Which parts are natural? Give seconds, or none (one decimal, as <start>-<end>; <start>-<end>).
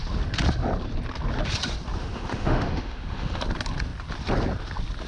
0.0-2.0; 3.4-5.1